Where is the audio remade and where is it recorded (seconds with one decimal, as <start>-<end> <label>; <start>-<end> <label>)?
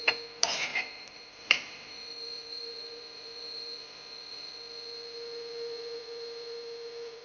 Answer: 0.0-0.7 recorded; 0.7-4.5 remade; 4.5-7.2 recorded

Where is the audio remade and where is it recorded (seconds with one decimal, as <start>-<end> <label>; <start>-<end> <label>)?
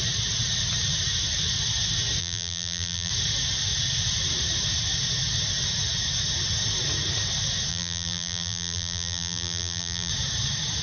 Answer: 0.0-2.2 recorded; 2.2-3.1 remade; 3.1-7.7 recorded; 7.7-10.1 remade; 10.1-10.8 recorded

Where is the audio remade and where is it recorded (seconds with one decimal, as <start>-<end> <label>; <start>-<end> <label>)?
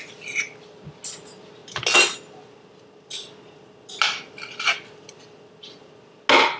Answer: 0.0-6.6 recorded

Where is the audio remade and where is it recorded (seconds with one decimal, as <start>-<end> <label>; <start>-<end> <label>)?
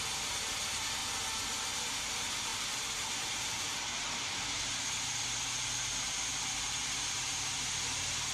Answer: 0.0-1.0 remade; 1.0-2.0 recorded; 2.0-8.3 remade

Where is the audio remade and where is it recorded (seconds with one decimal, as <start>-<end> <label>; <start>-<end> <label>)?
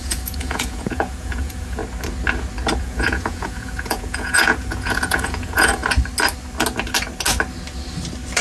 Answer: 0.0-1.8 remade; 1.8-2.8 recorded; 2.8-5.8 remade; 5.8-8.4 recorded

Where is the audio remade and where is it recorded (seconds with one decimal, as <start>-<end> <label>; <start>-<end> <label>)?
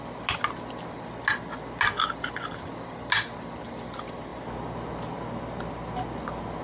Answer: 0.0-6.6 recorded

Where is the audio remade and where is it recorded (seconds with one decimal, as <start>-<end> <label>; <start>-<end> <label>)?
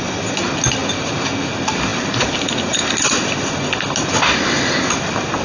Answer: 0.0-5.4 recorded